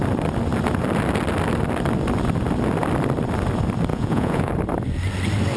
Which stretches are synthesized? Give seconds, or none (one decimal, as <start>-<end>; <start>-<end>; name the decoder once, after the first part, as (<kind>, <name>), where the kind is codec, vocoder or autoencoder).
3.9-4.5 (vocoder, Vocos)